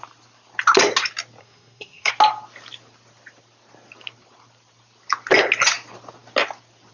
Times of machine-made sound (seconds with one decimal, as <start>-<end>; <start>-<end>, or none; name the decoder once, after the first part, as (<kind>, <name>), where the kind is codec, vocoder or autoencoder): 1.4-2.1 (codec, SNAC)